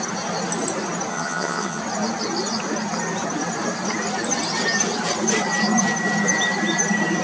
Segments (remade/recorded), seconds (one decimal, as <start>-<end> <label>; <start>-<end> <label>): 0.0-1.1 recorded; 1.1-1.8 remade; 1.8-7.2 recorded